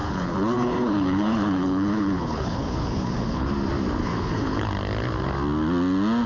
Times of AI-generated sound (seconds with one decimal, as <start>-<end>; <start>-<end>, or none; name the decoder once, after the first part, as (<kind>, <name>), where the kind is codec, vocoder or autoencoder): 0.0-3.5 (codec, HILCodec); 4.0-4.7